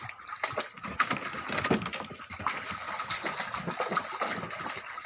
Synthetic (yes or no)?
no